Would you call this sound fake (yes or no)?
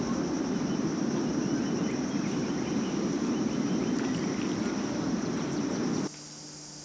no